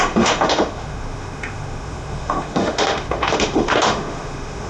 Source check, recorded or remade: remade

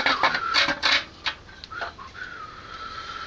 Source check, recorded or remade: recorded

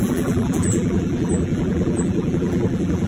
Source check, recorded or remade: remade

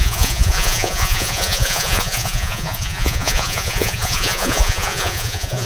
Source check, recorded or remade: remade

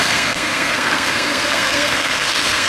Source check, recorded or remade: remade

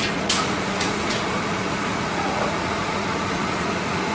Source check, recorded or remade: remade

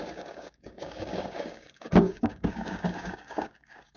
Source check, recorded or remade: remade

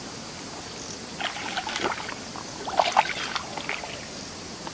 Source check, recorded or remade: recorded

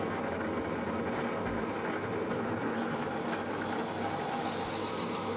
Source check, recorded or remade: recorded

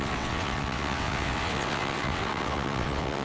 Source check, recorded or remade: remade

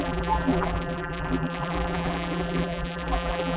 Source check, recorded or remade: remade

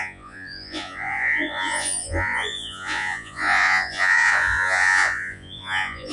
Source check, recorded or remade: remade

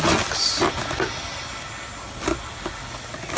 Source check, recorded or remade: recorded